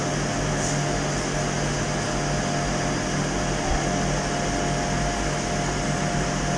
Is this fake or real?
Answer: real